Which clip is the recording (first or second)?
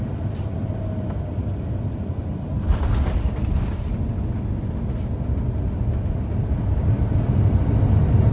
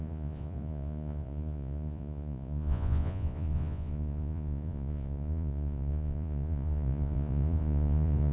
first